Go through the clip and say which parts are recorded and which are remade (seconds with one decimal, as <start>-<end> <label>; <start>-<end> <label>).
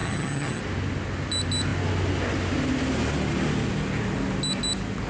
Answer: 0.0-0.6 remade; 0.6-5.1 recorded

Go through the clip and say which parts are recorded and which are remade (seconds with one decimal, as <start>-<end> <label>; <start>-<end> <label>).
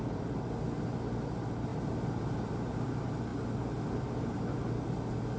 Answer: 0.0-5.4 recorded